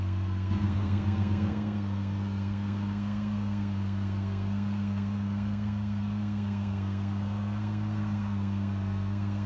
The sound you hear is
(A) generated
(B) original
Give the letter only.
A